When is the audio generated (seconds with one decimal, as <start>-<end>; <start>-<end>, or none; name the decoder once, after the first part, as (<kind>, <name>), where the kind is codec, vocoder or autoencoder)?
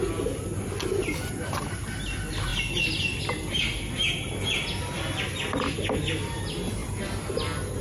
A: none